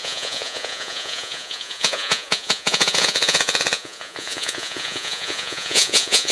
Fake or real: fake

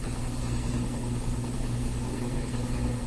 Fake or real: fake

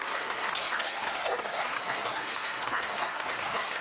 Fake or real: fake